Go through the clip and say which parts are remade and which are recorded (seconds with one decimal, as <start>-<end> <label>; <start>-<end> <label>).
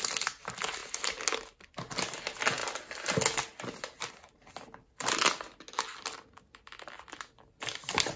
0.0-8.2 recorded